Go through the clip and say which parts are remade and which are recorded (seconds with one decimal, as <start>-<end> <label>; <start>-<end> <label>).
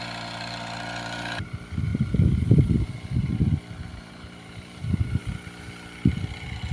0.0-3.9 recorded; 3.9-5.2 remade; 5.2-6.7 recorded